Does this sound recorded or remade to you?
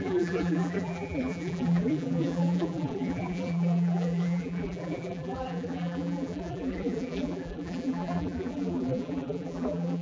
remade